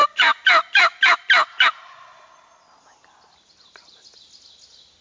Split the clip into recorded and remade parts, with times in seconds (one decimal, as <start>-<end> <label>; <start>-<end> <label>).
0.0-5.0 recorded